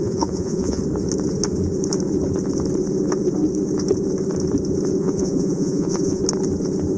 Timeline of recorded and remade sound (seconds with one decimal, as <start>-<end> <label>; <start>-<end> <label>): 0.0-0.8 remade; 0.8-5.0 recorded; 5.0-6.2 remade; 6.2-7.0 recorded